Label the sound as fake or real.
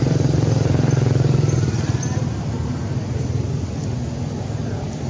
real